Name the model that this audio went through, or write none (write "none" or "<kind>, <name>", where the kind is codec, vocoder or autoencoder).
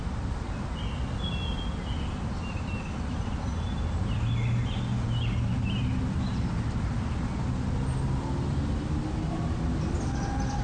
none